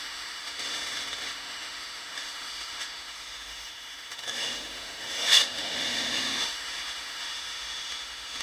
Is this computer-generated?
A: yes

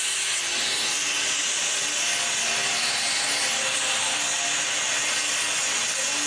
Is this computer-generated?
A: no